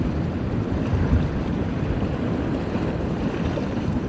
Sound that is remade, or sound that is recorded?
remade